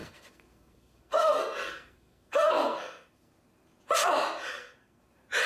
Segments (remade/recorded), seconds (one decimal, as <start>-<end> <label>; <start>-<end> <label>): 0.0-3.3 remade; 3.3-4.5 recorded; 4.5-5.0 remade; 5.0-5.5 recorded